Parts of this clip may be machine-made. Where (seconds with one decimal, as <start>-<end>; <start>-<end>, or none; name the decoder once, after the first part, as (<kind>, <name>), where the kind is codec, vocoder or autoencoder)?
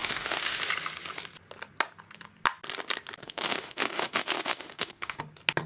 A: 0.0-0.6 (autoencoder, DAC-VAE); 3.2-5.2